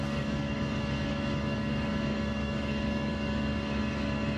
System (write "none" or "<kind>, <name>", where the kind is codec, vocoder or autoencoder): codec, DAC